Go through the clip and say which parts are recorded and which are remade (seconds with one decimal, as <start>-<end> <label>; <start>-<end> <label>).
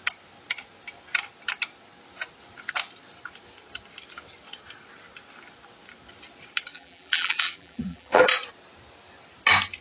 0.0-6.7 recorded; 6.7-8.2 remade; 8.2-9.8 recorded